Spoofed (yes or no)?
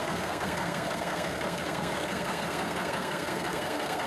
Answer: yes